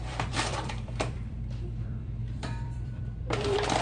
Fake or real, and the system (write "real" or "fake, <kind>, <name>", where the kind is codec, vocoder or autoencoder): fake, vocoder, BigVGAN v2